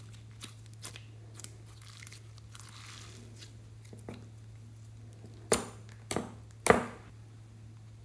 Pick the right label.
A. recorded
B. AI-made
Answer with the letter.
A